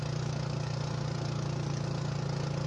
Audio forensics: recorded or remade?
recorded